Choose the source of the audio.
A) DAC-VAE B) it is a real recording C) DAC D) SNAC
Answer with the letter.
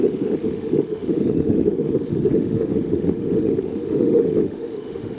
A